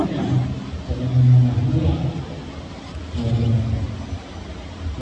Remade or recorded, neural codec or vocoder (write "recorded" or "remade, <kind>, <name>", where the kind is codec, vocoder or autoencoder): recorded